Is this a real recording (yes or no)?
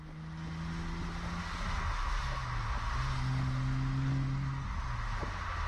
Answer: yes